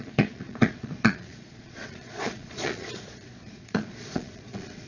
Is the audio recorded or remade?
remade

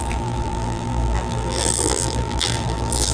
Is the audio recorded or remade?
remade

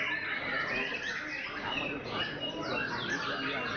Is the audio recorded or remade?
recorded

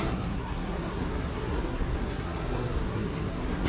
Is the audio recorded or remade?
remade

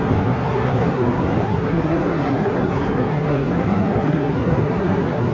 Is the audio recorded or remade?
remade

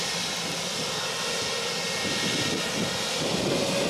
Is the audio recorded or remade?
recorded